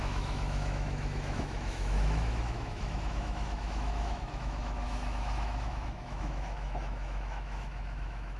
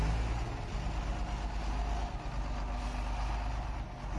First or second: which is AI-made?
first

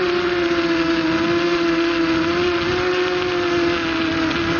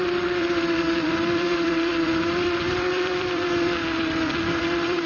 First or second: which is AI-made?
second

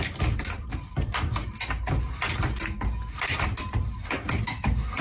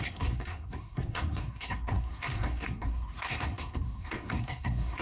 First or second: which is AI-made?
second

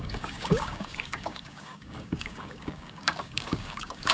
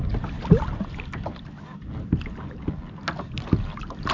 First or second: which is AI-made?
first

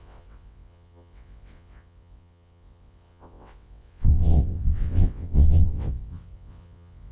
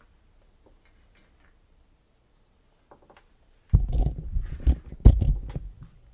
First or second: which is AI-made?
first